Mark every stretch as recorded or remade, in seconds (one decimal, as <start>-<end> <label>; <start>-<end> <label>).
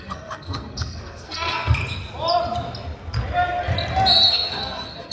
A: 0.0-1.8 remade; 1.8-4.3 recorded; 4.3-5.1 remade